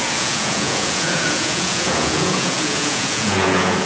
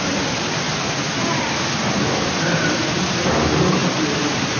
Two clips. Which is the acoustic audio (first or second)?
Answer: second